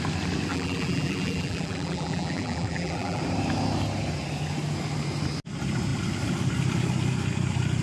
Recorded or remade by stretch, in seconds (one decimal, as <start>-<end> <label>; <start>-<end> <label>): 0.0-0.5 recorded; 0.5-3.2 remade; 3.2-7.8 recorded